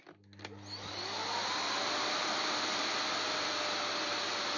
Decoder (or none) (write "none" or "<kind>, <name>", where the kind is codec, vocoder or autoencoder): none